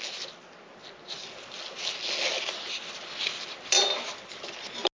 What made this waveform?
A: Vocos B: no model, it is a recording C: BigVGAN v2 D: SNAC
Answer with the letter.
B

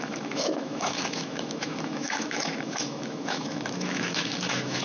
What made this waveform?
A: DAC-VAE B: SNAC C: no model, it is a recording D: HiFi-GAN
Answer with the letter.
A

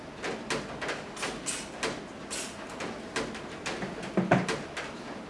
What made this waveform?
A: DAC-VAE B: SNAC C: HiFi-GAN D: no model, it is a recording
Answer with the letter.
D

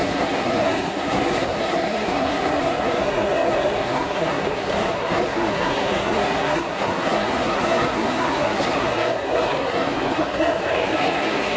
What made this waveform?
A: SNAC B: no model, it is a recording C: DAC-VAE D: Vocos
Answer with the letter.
A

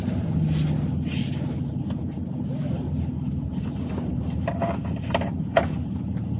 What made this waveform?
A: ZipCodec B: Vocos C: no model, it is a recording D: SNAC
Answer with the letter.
C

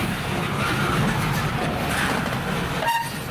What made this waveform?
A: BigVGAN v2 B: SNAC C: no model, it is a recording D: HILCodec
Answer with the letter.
A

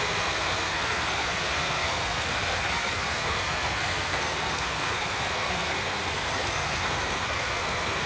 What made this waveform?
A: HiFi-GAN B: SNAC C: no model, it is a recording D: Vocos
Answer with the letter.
B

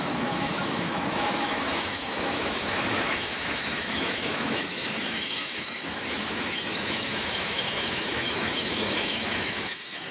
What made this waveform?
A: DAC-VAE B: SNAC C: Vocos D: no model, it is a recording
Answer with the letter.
A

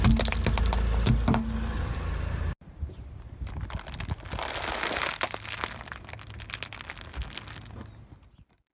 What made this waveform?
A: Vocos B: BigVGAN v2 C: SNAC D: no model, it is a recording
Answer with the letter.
D